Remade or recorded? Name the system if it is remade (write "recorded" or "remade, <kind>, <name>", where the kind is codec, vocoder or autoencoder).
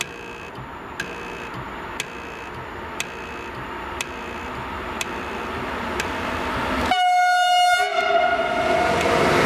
recorded